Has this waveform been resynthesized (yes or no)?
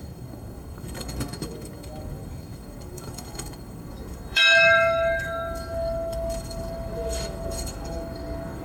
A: yes